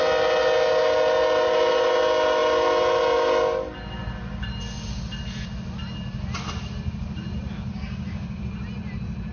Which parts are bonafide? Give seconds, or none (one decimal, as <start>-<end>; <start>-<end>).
0.0-7.7; 8.4-9.3